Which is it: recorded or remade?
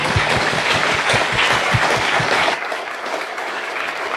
remade